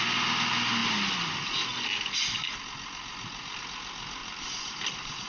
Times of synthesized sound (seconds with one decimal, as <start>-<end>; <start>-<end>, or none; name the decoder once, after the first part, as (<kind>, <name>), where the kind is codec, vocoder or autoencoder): 4.2-5.3 (vocoder, BigVGAN v2)